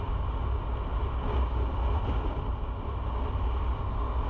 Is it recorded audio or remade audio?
recorded